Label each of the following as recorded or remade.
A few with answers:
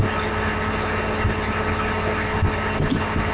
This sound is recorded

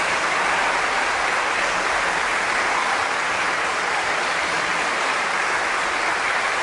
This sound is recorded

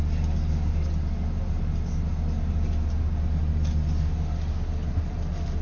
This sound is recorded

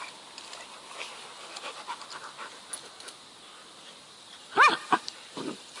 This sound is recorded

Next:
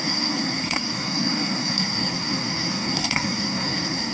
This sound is remade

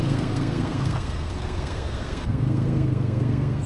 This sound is remade